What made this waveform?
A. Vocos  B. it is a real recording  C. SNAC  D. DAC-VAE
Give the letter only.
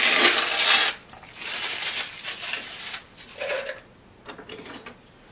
B